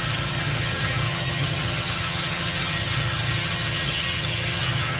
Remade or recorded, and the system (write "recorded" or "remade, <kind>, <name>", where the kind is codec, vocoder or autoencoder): remade, vocoder, HiFi-GAN